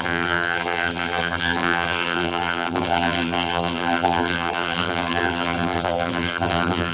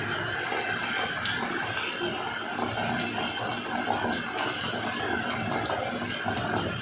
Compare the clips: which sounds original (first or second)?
second